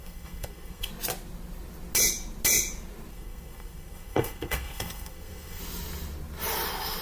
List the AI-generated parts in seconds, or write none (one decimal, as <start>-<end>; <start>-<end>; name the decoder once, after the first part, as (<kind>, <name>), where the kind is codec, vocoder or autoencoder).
0.0-0.9 (codec, SNAC); 3.1-5.6